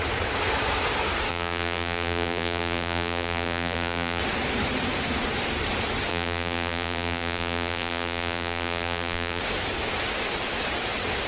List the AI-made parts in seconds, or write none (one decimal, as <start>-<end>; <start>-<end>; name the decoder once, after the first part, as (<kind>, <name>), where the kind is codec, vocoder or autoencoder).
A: 1.3-4.2 (vocoder, BigVGAN v2); 6.1-9.4